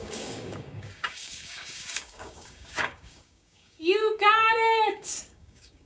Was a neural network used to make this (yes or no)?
yes